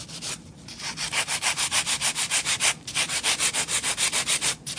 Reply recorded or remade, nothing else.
recorded